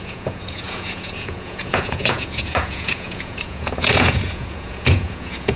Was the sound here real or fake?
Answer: fake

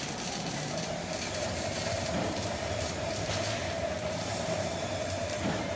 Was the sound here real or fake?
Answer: fake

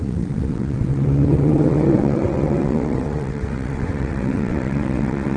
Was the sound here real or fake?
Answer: fake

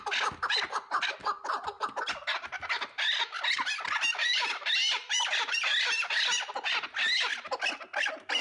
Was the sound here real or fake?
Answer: real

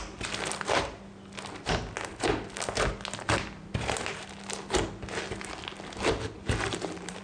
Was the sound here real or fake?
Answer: real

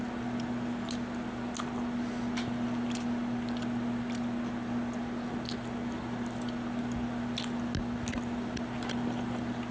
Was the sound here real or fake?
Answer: real